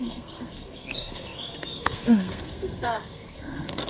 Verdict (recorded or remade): remade